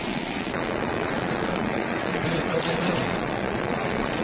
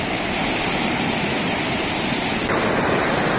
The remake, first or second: first